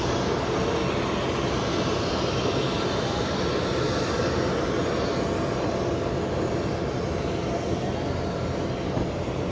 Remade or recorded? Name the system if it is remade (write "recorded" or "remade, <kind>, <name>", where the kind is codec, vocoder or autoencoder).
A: recorded